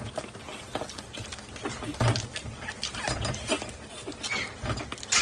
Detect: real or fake real